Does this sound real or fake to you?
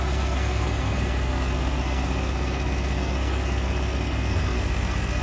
fake